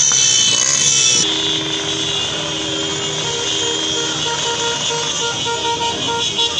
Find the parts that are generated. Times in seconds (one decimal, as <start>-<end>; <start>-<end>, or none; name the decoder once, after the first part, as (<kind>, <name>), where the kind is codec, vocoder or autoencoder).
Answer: none